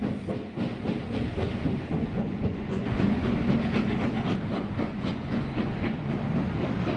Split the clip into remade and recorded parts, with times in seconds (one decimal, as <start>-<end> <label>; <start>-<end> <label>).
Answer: 0.0-1.9 recorded; 1.9-3.3 remade; 3.3-4.5 recorded; 4.5-6.1 remade; 6.1-7.0 recorded